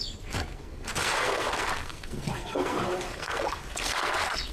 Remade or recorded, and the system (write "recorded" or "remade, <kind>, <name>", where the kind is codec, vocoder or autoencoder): remade, codec, SNAC